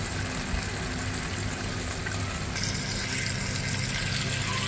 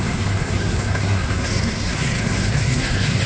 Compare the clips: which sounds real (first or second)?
first